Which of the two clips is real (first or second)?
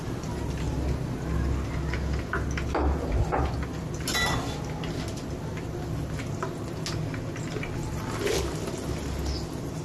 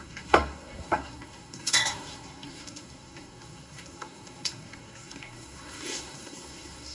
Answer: first